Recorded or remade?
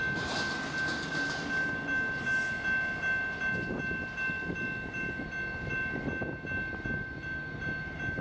recorded